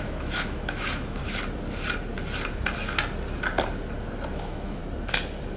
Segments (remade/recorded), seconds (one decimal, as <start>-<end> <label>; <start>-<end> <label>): 0.0-1.2 remade; 1.2-4.3 recorded; 4.3-4.8 remade; 4.8-5.6 recorded